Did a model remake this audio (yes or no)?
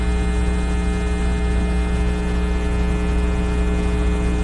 no